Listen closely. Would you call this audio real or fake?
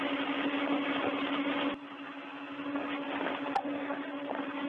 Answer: real